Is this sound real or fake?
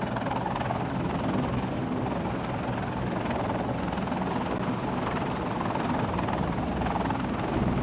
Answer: real